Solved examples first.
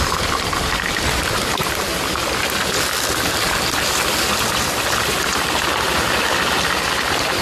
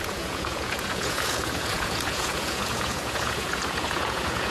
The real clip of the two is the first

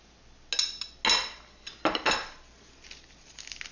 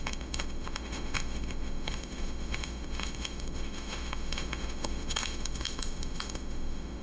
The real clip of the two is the first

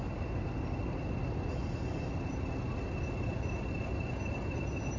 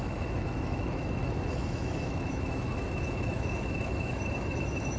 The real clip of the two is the first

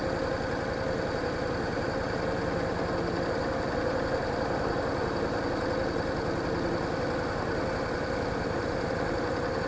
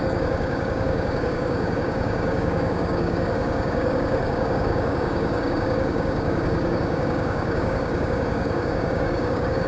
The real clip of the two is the first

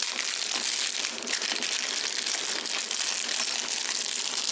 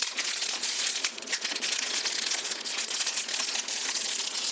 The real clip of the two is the first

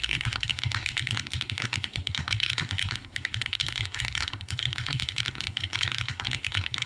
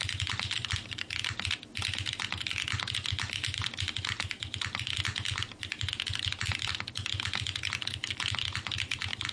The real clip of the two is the second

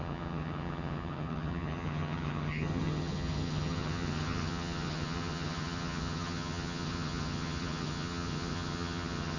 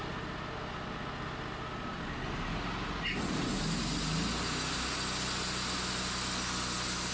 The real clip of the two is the second